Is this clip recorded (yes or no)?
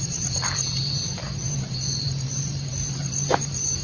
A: no